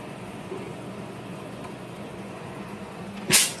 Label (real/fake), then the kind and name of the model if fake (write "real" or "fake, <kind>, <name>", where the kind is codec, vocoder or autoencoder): fake, vocoder, Vocos